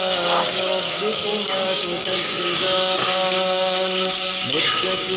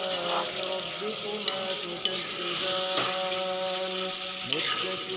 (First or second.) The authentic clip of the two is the second